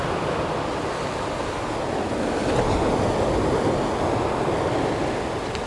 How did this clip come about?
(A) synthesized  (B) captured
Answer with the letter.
B